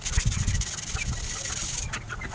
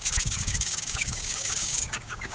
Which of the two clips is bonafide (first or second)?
first